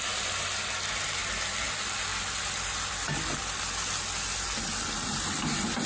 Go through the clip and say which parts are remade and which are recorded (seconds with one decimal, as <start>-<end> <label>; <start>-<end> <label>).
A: 0.0-5.9 recorded